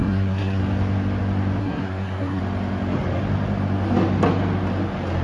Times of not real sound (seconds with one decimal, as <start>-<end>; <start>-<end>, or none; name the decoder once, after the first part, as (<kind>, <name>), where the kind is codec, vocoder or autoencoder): 0.0-0.6 (codec, SNAC); 1.6-2.4